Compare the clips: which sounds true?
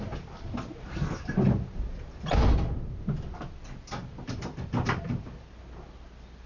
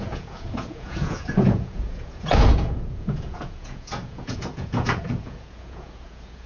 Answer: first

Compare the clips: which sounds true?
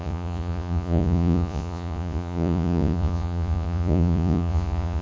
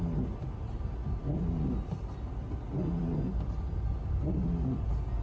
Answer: second